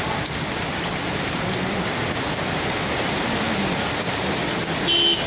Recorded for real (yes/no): yes